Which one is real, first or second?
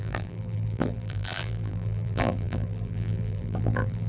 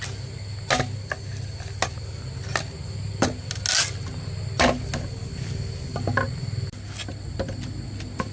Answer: second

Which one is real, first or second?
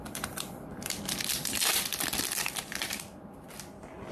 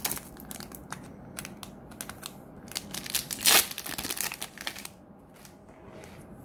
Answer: second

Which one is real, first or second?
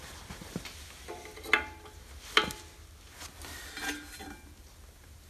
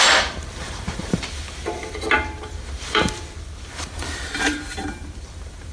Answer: first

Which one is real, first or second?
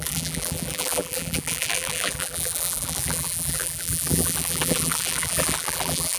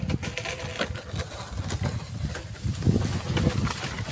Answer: second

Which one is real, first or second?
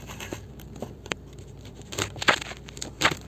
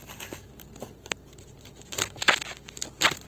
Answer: second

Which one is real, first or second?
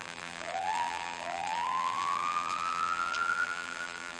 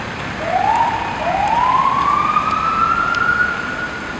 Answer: second